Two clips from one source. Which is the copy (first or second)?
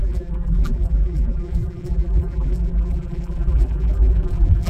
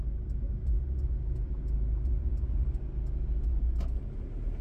first